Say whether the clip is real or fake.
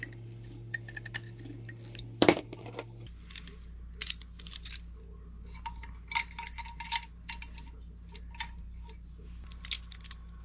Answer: real